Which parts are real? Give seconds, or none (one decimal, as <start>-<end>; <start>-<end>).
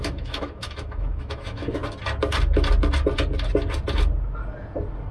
1.8-5.1